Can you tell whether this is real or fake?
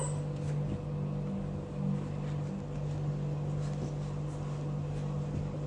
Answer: real